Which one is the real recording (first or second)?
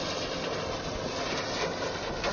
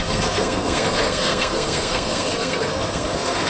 first